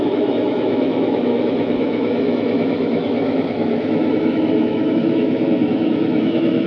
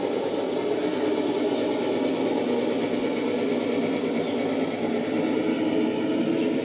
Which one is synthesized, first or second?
first